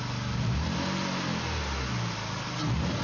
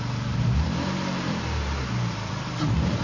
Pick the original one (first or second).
first